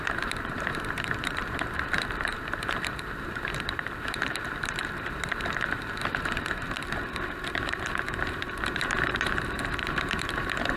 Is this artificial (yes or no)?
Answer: yes